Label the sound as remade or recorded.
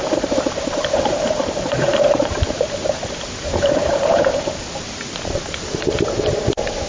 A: remade